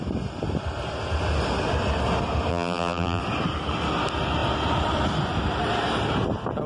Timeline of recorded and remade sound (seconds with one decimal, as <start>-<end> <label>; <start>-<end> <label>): 0.0-2.5 recorded; 2.5-3.2 remade; 3.2-6.7 recorded